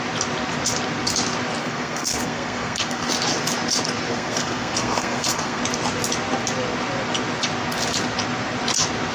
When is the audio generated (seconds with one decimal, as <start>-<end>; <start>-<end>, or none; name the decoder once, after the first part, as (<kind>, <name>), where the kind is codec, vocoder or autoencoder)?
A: 1.6-3.1 (codec, SNAC); 4.1-5.6

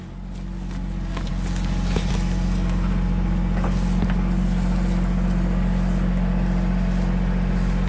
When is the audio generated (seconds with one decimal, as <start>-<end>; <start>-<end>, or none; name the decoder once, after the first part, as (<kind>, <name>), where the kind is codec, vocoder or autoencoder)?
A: none

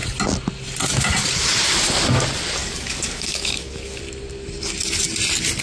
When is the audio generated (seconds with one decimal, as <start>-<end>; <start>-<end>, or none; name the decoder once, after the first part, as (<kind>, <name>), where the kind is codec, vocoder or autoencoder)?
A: 2.6-4.0 (codec, DAC)